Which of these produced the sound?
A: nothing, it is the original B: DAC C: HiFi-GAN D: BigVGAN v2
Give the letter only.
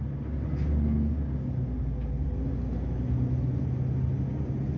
A